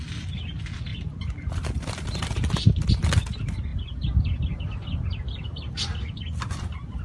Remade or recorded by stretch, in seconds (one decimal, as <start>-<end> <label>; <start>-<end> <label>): 0.0-3.7 recorded; 3.7-6.2 remade; 6.2-7.0 recorded